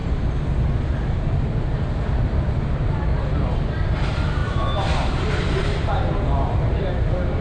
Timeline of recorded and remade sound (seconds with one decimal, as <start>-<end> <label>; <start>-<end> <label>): 0.0-7.4 recorded